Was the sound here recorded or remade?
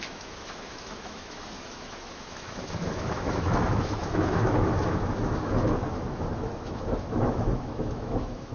remade